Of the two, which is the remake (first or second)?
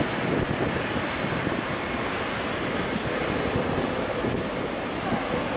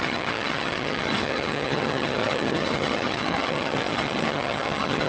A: second